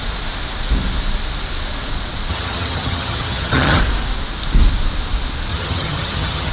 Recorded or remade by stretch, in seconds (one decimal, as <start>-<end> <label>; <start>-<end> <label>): 0.0-2.3 recorded; 2.3-3.8 remade; 3.8-5.5 recorded; 5.5-6.5 remade